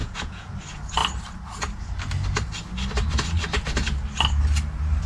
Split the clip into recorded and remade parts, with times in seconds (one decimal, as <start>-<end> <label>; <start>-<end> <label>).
0.0-0.5 remade; 0.5-5.1 recorded

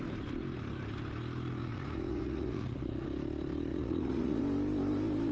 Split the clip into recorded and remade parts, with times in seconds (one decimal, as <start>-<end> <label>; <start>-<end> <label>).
0.0-1.6 recorded; 1.6-3.0 remade; 3.0-3.7 recorded; 3.7-4.4 remade; 4.4-5.3 recorded

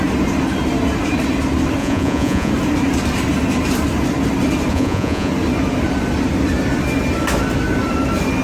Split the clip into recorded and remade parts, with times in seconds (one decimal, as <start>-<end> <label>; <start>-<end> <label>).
0.0-1.8 recorded; 1.8-2.5 remade; 2.5-4.7 recorded; 4.7-5.3 remade; 5.3-8.4 recorded

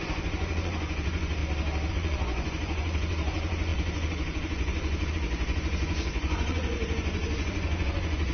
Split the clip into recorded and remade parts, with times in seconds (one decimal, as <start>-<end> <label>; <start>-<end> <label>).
0.0-1.4 remade; 1.4-1.9 recorded; 1.9-8.3 remade